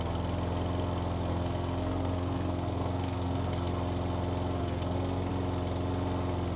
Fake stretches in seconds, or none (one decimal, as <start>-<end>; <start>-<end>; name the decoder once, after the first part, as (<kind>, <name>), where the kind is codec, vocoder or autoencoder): 1.3-3.7 (codec, SNAC); 4.6-5.3